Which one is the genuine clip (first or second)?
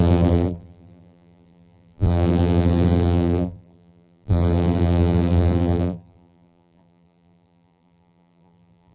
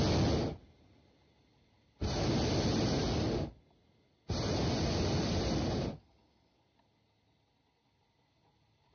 second